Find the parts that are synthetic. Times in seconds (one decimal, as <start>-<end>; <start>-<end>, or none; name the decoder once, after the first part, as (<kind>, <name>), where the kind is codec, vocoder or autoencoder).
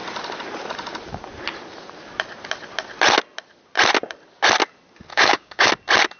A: 5.1-5.7 (codec, DAC)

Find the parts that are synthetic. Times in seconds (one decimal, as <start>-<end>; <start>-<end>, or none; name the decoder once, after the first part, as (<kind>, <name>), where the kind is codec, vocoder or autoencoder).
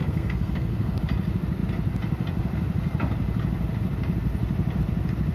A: 0.0-1.0 (codec, SNAC)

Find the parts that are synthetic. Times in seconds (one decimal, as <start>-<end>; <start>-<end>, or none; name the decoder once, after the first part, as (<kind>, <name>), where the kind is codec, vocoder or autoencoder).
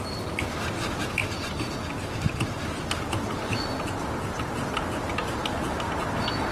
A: none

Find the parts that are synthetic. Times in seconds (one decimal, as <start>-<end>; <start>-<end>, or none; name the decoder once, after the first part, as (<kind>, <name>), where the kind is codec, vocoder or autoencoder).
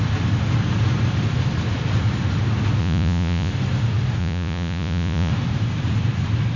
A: 2.8-3.5 (vocoder, Vocos); 4.2-5.3